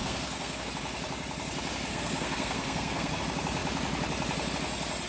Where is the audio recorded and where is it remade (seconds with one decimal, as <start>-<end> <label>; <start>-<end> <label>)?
0.0-0.7 remade; 0.7-1.9 recorded; 1.9-3.2 remade; 3.2-5.1 recorded

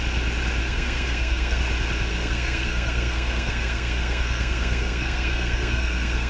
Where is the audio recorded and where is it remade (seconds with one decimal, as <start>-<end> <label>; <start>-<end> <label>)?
0.0-0.6 recorded; 0.6-1.6 remade; 1.6-2.1 recorded; 2.1-6.3 remade

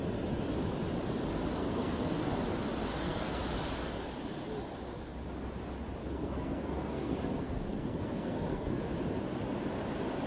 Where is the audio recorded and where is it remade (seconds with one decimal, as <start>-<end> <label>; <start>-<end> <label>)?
0.0-1.6 recorded; 1.6-2.2 remade; 2.2-2.9 recorded; 2.9-3.4 remade; 3.4-6.0 recorded; 6.0-8.8 remade; 8.8-10.3 recorded

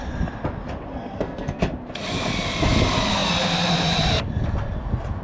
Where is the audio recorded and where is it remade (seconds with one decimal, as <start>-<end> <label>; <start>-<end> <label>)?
0.0-0.9 recorded; 0.9-1.6 remade; 1.6-5.2 recorded

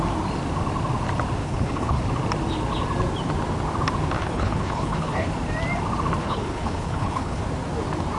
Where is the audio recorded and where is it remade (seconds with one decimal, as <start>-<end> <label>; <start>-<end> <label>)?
0.0-1.4 recorded; 1.4-2.0 remade; 2.0-4.2 recorded; 4.2-5.3 remade; 5.3-6.2 recorded; 6.2-7.4 remade; 7.4-8.2 recorded

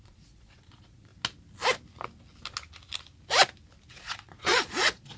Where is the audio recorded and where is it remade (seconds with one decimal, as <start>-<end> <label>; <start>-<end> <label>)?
0.0-1.1 remade; 1.1-3.9 recorded; 3.9-5.2 remade